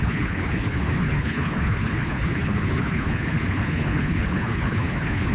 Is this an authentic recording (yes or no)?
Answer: no